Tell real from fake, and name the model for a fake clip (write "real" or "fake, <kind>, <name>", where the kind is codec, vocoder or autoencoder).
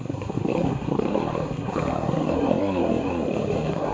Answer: fake, codec, SNAC